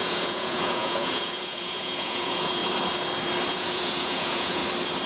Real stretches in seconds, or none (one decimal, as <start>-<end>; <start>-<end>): 2.6-3.5; 4.6-5.1